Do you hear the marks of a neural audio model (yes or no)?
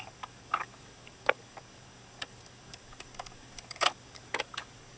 yes